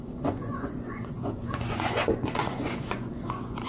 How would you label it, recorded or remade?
remade